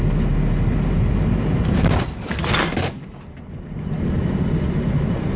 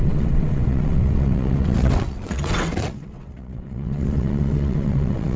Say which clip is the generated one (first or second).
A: second